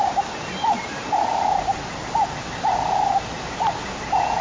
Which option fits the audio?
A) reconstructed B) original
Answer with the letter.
B